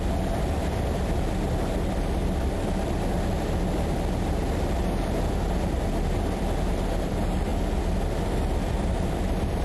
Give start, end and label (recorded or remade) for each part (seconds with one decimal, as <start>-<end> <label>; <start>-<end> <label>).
0.0-9.6 remade